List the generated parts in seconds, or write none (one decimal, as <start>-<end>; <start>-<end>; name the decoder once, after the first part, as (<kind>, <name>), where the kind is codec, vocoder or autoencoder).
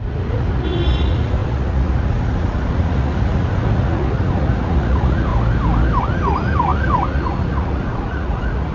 0.0-5.3 (vocoder, Vocos); 6.0-8.7